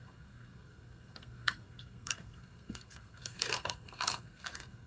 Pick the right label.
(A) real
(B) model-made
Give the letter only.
B